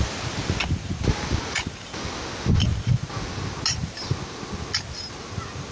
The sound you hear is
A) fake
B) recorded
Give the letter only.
B